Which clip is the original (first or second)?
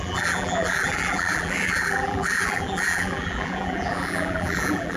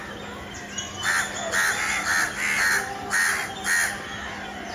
second